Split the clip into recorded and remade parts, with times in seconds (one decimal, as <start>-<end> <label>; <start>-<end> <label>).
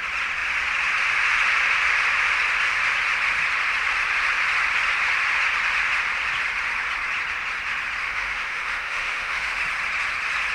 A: 0.0-8.0 recorded; 8.0-9.6 remade; 9.6-10.5 recorded